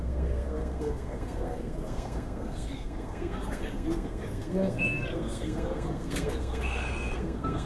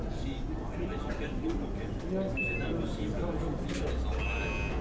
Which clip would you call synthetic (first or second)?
first